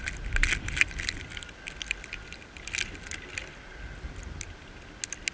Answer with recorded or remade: recorded